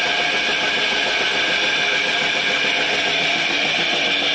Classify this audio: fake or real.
real